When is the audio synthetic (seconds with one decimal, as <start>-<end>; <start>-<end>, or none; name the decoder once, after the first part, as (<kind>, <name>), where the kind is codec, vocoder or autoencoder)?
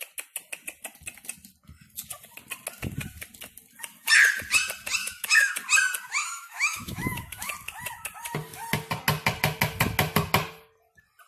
5.0-5.5 (autoencoder, DAC-VAE); 6.2-7.5